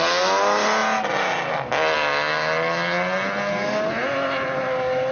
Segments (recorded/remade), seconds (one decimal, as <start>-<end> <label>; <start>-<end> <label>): 0.0-5.1 recorded